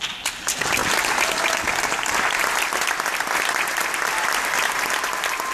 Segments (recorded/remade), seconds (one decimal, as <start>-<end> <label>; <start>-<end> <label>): 0.0-5.5 recorded